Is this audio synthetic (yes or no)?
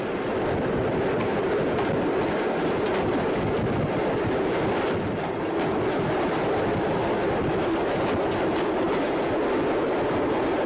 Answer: no